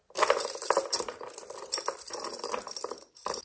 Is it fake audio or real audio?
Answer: real